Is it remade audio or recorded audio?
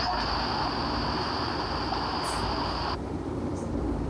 remade